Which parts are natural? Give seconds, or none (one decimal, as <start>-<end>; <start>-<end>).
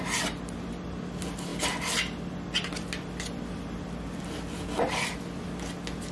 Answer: 0.0-6.1